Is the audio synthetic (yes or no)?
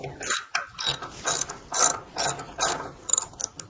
no